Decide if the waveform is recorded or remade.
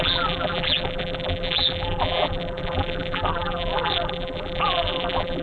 remade